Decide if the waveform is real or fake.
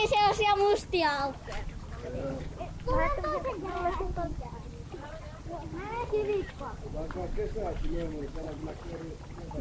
real